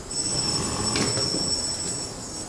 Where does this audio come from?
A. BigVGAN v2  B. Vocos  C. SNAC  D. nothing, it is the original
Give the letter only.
D